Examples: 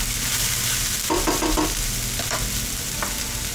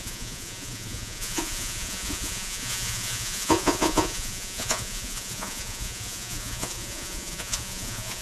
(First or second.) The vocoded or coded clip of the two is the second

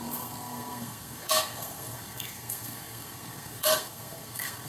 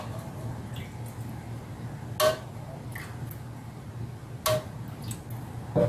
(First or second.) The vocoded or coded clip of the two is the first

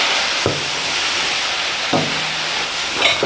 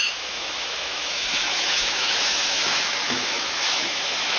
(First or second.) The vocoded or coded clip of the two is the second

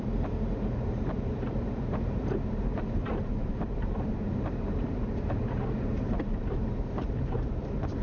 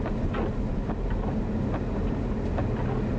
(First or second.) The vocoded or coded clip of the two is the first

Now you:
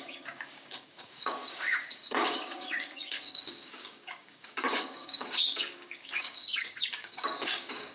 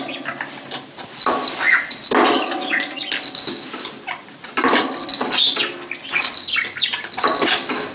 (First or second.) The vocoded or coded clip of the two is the first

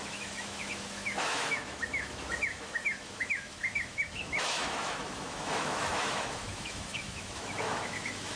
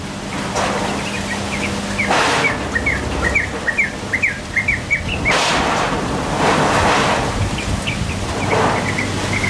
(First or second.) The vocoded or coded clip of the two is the first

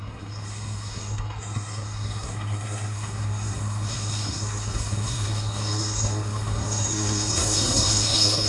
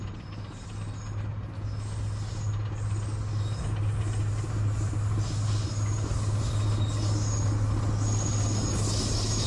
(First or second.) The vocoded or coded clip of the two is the first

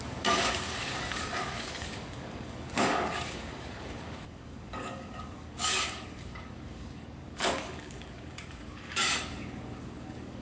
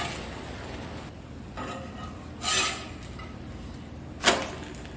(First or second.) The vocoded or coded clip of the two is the first